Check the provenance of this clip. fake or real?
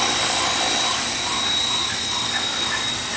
fake